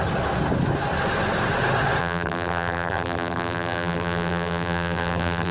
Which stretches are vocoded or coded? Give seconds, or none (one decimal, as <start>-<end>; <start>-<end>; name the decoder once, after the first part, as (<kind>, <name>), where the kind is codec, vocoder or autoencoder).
2.0-5.5 (vocoder, BigVGAN v2)